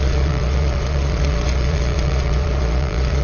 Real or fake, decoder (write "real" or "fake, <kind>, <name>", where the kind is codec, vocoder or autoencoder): fake, vocoder, Vocos